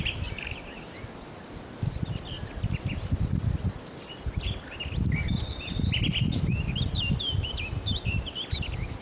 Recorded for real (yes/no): no